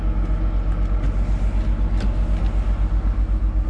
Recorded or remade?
recorded